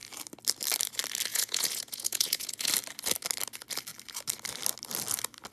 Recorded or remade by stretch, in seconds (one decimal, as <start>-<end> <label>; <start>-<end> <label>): 0.0-1.3 recorded; 1.3-2.7 remade; 2.7-5.5 recorded